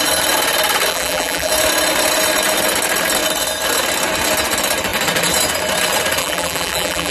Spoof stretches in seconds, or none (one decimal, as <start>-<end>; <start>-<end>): 0.9-1.5; 6.2-7.1